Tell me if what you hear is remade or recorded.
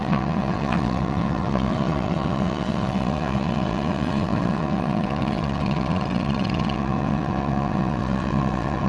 remade